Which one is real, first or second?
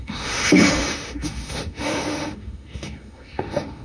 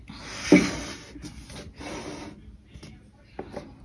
second